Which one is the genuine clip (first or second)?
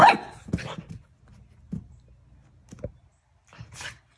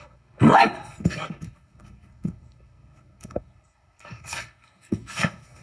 first